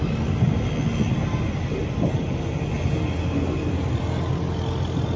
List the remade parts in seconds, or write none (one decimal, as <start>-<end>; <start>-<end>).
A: none